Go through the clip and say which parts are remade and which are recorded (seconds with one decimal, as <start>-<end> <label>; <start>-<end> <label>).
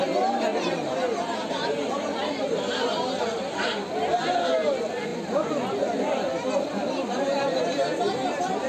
0.0-6.7 recorded; 6.7-7.2 remade; 7.2-8.7 recorded